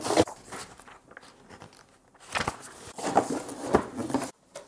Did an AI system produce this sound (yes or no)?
no